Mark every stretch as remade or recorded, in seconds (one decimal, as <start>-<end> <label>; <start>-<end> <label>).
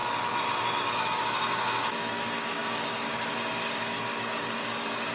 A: 0.0-0.6 recorded; 0.6-5.1 remade